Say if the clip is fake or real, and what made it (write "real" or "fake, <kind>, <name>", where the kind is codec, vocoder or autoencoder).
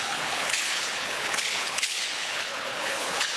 fake, codec, HILCodec